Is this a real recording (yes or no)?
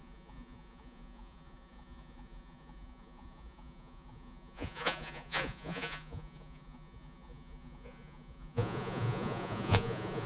no